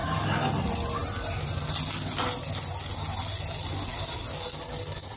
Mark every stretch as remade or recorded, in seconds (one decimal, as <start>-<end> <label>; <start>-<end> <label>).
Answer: 0.0-5.2 recorded